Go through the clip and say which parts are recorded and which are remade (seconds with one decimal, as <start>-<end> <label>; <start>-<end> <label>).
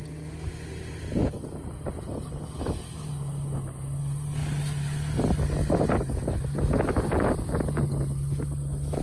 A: 0.0-9.0 recorded